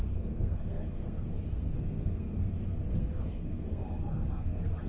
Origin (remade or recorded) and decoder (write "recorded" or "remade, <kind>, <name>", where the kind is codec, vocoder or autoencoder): remade, codec, SNAC